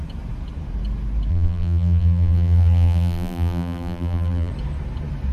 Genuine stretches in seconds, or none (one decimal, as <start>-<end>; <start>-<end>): 0.0-1.3; 4.5-5.3